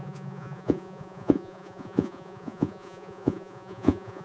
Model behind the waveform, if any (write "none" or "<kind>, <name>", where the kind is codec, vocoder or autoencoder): vocoder, Vocos